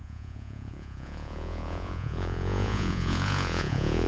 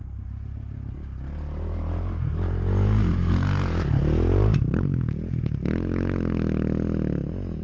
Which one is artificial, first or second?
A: first